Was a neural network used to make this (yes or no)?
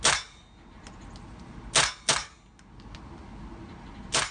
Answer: no